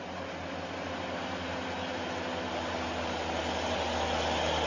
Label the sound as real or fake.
real